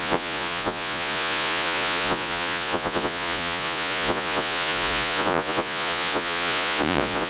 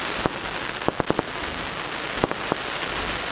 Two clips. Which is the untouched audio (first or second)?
second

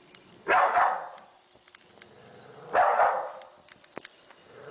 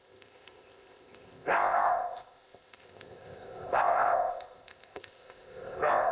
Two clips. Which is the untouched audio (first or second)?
first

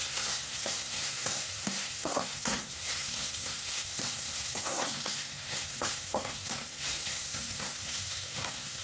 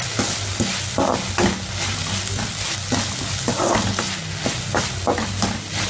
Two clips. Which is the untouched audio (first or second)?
second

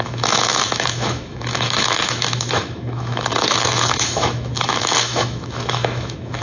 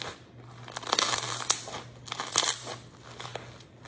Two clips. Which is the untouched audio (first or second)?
second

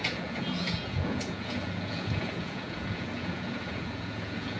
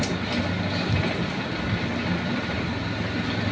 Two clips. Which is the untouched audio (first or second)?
second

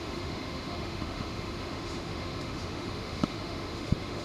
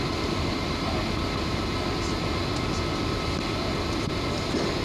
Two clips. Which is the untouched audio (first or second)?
second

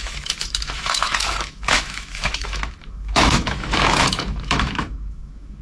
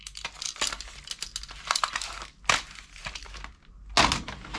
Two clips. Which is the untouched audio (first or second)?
second